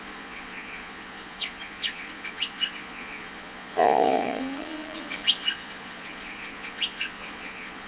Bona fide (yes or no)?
no